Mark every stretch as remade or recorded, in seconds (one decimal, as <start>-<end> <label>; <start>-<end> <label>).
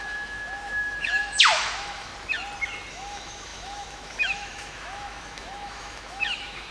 0.0-2.1 remade; 2.1-2.9 recorded; 2.9-6.7 remade